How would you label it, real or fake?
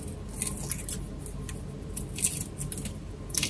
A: real